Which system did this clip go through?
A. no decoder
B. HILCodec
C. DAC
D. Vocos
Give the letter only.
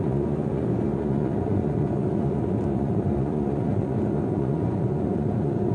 D